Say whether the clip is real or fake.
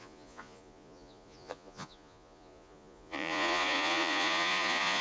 fake